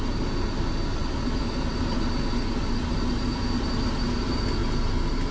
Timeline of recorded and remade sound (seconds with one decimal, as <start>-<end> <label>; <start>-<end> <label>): 0.0-5.3 recorded